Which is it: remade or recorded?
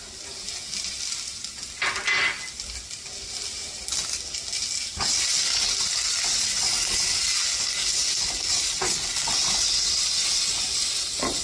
recorded